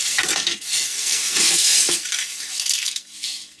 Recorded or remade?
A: remade